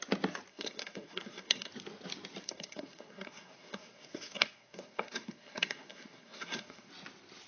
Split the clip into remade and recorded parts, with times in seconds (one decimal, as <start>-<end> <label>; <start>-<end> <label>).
0.0-0.5 recorded; 0.5-1.7 remade; 1.7-2.4 recorded; 2.4-6.9 remade; 6.9-7.5 recorded